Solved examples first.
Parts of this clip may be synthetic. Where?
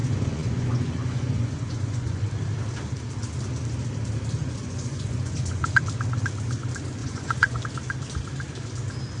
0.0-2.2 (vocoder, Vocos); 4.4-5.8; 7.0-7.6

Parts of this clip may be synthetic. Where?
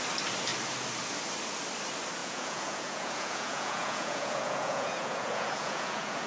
2.2-6.3 (vocoder, Vocos)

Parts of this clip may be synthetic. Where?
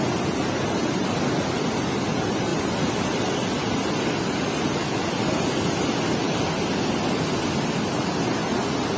none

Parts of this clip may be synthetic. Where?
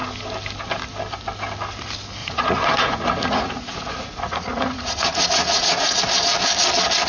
2.2-6.0 (vocoder, Vocos)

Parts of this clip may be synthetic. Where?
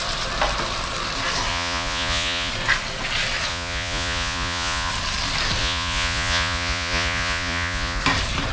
1.5-2.5 (vocoder, Vocos); 3.5-4.9; 5.6-8.0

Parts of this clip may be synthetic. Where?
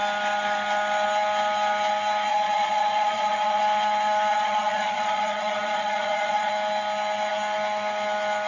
2.3-3.6 (vocoder, Vocos); 4.3-6.5